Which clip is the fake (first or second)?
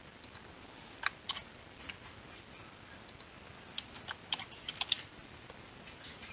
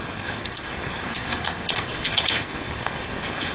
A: second